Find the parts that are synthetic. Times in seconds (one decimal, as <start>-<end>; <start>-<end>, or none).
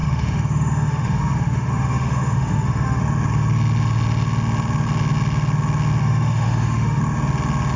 0.0-3.0; 6.0-7.0